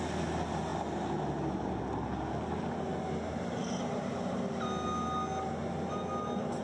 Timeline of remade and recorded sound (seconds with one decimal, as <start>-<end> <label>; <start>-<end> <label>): 0.0-6.6 recorded